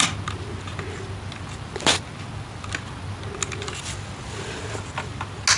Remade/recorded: recorded